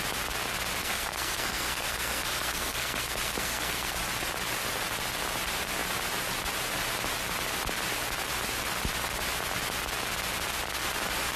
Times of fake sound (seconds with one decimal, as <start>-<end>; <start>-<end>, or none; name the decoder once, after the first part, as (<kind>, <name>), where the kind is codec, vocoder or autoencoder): 0.8-4.0 (codec, SNAC)